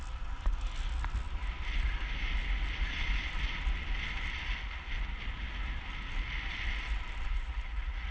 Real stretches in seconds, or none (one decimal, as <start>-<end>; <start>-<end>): 0.0-7.3